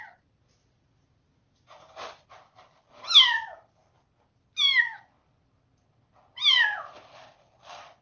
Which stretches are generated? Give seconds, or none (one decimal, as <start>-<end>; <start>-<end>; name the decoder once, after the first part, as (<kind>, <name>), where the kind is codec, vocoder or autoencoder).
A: none

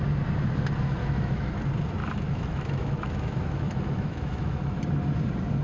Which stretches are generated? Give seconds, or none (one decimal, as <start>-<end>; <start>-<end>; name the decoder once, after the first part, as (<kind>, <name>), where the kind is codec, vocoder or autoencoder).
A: 1.0-1.5 (autoencoder, DAC-VAE); 2.0-4.8

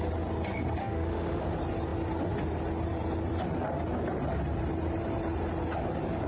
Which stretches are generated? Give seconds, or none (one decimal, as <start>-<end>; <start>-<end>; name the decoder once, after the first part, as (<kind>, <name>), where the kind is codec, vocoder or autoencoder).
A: 0.8-1.4 (autoencoder, DAC-VAE)

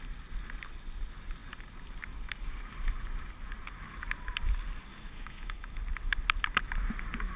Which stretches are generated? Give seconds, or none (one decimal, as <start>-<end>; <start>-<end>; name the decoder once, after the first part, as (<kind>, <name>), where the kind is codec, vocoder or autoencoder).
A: 4.9-5.8 (autoencoder, DAC-VAE)

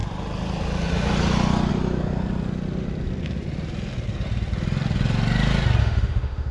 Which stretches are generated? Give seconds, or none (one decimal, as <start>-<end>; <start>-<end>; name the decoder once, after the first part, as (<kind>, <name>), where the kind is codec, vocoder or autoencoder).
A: 5.8-6.5 (autoencoder, DAC-VAE)

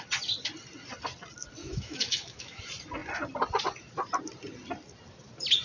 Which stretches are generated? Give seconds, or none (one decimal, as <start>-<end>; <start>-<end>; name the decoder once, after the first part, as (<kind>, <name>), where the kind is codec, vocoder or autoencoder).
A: 1.6-2.6 (autoencoder, DAC-VAE)

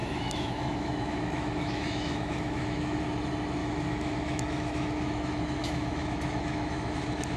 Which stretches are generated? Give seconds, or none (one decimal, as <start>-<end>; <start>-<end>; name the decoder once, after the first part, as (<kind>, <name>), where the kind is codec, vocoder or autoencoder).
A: 0.0-3.0 (autoencoder, DAC-VAE); 3.6-7.4

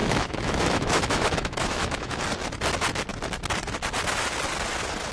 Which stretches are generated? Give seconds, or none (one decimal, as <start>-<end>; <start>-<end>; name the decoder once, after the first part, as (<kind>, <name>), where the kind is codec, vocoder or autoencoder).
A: 0.0-2.2 (autoencoder, DAC-VAE)